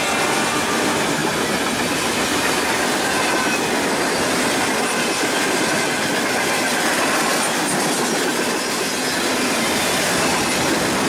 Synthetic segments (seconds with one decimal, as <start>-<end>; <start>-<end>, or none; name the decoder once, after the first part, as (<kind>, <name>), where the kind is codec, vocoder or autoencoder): none